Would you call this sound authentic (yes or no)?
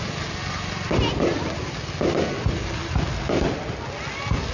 yes